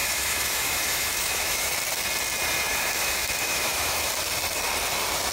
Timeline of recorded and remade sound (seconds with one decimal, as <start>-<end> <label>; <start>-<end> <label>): 0.0-1.7 remade; 1.7-2.7 recorded; 2.7-4.1 remade; 4.1-5.3 recorded